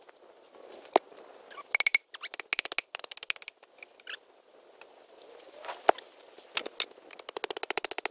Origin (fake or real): real